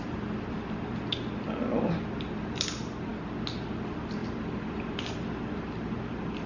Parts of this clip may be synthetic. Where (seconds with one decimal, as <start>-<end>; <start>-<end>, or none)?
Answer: none